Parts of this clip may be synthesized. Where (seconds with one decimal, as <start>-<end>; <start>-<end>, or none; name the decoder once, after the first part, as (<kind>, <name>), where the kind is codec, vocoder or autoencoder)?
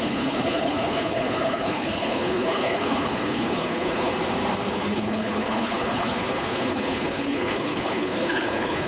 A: 0.0-4.1 (codec, HILCodec); 4.7-8.9